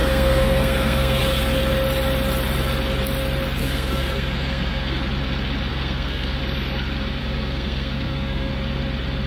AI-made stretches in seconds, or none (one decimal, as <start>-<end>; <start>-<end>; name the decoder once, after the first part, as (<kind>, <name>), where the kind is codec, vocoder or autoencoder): 0.0-1.2 (codec, SNAC); 3.6-5.0; 5.7-6.4; 7.2-8.5